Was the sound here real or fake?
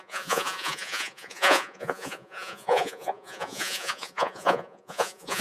fake